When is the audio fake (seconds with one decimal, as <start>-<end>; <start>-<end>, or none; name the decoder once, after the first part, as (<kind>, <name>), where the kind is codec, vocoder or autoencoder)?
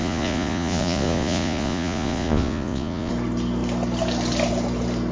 0.0-3.1 (vocoder, Vocos)